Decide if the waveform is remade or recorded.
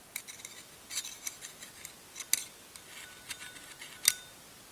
recorded